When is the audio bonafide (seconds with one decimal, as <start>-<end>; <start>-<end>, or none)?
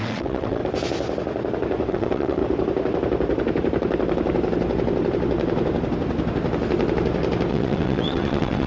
0.6-1.9; 2.4-7.5